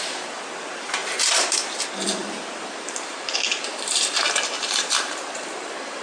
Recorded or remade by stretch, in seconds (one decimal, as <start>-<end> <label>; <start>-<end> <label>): 0.0-1.0 recorded; 1.0-1.8 remade; 1.8-2.2 recorded; 2.2-6.0 remade